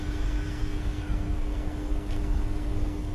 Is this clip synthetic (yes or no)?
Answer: yes